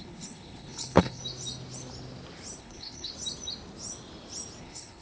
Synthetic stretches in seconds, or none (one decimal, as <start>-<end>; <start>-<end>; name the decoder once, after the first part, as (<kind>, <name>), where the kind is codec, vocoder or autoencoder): 0.0-1.2 (codec, HILCodec); 2.6-3.1; 4.6-5.0